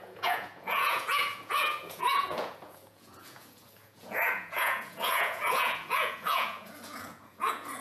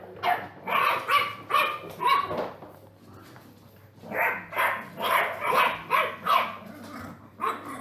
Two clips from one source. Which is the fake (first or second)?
first